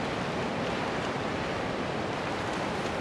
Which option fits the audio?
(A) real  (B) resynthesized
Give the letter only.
B